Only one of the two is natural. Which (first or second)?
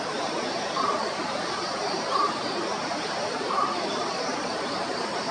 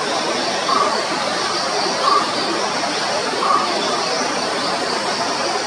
second